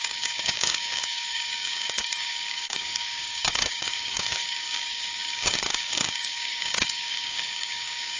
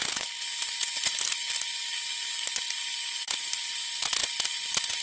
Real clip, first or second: second